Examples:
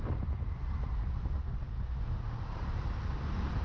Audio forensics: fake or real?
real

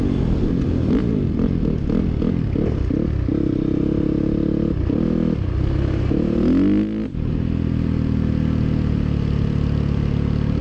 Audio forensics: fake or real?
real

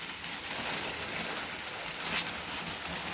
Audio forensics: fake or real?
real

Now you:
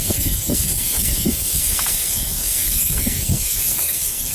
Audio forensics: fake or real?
fake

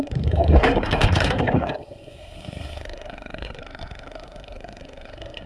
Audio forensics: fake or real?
fake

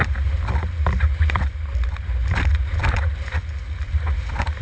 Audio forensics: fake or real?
real